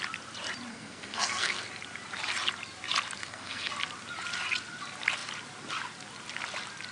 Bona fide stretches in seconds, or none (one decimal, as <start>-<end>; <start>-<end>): 0.0-0.7; 1.7-3.2; 3.7-6.9